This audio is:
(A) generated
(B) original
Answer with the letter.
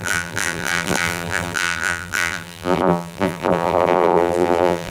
A